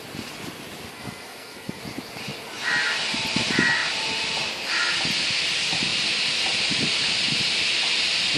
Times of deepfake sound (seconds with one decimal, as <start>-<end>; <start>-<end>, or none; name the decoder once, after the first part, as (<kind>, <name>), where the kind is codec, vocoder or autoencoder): 0.9-1.8 (codec, SNAC)